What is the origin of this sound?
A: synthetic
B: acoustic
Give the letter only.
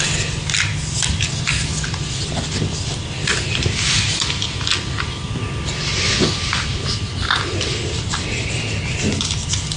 B